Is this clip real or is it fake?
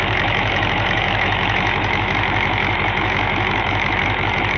fake